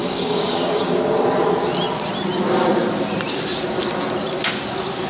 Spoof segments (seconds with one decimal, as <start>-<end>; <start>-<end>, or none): 0.0-0.8